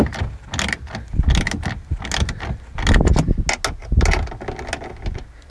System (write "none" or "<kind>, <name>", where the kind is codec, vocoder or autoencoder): none